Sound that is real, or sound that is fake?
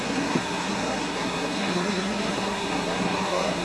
fake